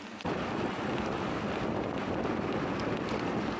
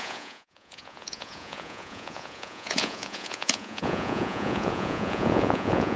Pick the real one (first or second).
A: first